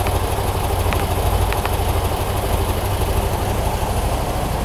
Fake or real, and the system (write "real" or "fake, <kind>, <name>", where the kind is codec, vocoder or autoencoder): real